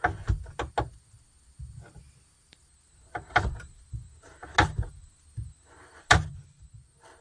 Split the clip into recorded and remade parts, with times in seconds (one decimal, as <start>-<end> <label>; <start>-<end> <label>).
0.0-7.2 recorded